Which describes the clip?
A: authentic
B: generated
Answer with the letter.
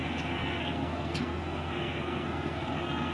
B